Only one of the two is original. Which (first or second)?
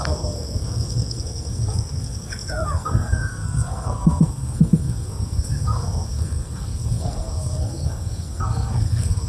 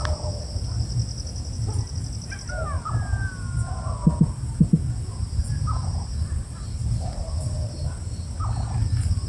second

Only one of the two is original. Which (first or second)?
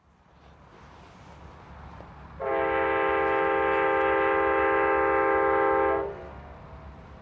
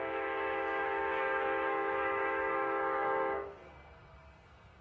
first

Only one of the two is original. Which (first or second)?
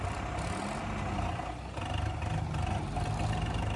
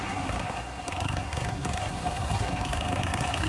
first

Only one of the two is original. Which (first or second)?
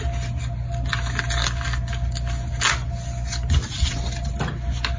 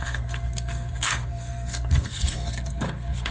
first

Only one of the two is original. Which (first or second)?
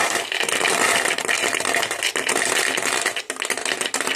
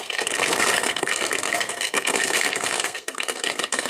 first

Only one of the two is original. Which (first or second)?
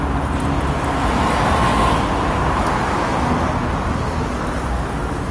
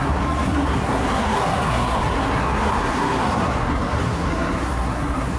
first